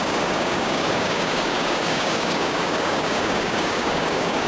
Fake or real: fake